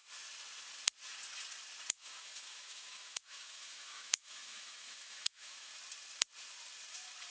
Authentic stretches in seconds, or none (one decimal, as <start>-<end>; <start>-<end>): 0.0-1.9; 5.7-7.3